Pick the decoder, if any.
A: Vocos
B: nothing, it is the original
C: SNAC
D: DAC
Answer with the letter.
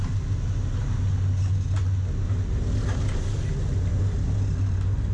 B